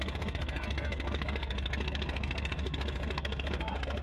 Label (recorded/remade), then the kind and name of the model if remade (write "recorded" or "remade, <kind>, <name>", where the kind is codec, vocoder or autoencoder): remade, codec, SNAC